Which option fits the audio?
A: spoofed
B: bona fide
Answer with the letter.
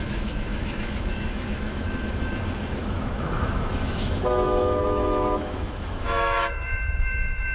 A